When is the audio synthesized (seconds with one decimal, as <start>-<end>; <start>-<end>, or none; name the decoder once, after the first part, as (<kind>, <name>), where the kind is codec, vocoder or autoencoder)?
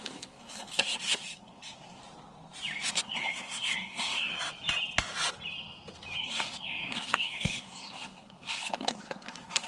0.0-2.0 (codec, SNAC); 2.9-4.3; 6.2-9.7